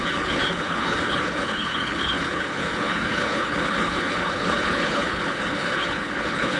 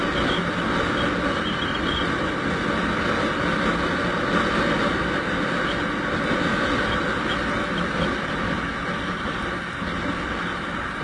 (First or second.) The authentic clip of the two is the second